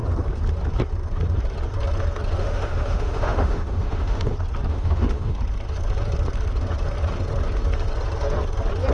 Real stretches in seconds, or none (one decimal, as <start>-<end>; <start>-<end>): 0.0-2.4; 4.3-4.7; 5.4-8.9